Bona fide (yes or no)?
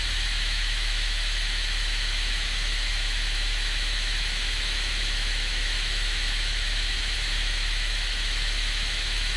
no